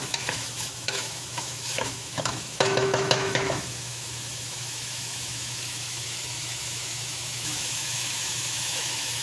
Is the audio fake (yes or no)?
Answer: yes